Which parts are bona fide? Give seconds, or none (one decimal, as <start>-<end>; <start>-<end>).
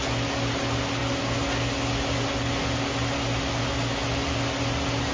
0.0-5.1